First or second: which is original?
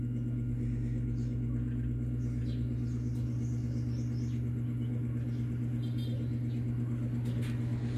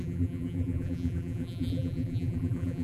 first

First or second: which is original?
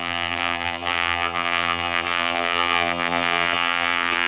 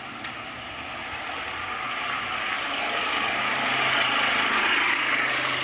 second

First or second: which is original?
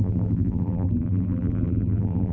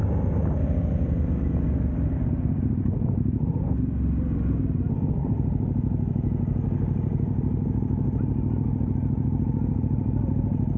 second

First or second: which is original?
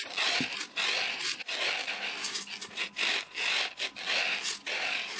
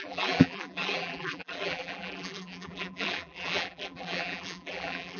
first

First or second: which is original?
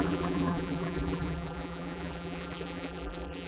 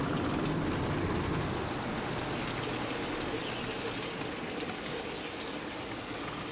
second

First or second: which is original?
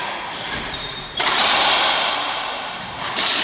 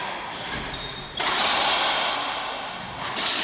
second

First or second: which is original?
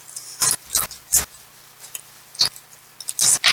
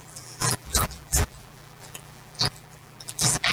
first